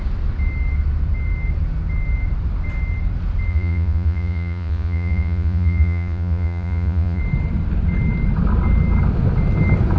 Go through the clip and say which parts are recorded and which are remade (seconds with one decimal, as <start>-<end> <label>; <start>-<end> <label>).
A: 0.0-3.5 recorded; 3.5-7.2 remade; 7.2-10.0 recorded